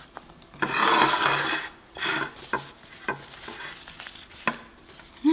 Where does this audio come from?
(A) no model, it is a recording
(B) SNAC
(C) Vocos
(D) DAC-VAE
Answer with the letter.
A